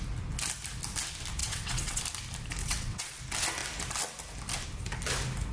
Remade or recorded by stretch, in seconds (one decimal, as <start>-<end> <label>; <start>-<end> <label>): 0.0-1.4 recorded; 1.4-2.0 remade; 2.0-2.6 recorded; 2.6-3.2 remade; 3.2-5.5 recorded